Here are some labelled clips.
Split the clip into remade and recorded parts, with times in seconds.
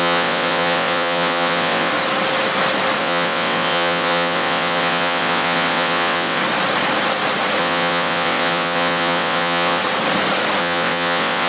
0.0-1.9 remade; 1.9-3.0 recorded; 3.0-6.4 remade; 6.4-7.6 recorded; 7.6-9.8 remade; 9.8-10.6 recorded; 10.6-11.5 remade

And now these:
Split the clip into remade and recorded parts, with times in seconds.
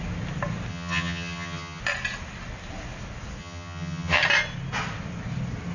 0.0-0.7 recorded; 0.7-1.8 remade; 1.8-3.4 recorded; 3.4-4.2 remade; 4.2-5.7 recorded